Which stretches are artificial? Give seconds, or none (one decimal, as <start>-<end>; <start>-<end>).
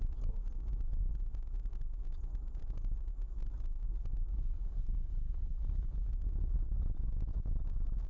4.3-6.1